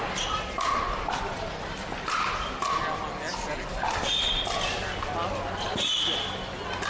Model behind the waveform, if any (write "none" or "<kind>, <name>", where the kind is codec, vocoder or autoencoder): none